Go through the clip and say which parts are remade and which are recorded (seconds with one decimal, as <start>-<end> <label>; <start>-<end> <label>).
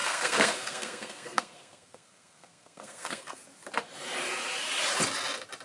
0.0-3.4 remade; 3.4-5.6 recorded